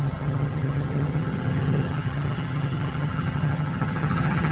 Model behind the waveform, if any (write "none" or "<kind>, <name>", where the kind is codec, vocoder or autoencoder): vocoder, HiFi-GAN